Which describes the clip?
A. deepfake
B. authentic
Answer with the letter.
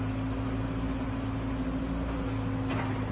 B